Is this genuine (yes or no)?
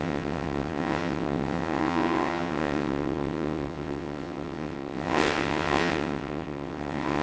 no